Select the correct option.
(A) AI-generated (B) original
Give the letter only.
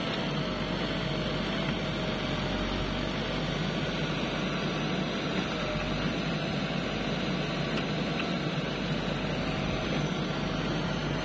B